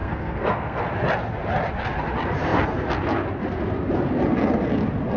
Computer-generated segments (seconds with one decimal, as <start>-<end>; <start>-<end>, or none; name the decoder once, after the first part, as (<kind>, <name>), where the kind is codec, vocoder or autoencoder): 0.0-0.8 (codec, SNAC)